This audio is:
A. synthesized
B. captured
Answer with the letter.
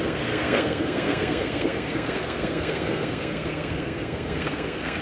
A